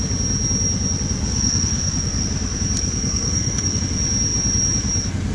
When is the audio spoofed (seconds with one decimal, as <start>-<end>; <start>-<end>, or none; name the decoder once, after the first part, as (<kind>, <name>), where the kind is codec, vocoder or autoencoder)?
1.2-2.2 (codec, SNAC); 2.8-3.8